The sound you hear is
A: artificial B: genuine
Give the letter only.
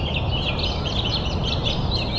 B